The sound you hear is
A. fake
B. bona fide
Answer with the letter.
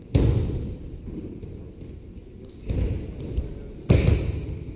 B